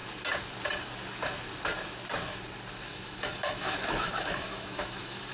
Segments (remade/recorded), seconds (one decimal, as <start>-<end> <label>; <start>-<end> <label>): 0.0-2.9 recorded; 2.9-5.3 remade